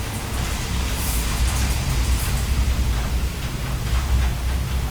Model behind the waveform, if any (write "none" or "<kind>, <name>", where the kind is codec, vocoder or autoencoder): none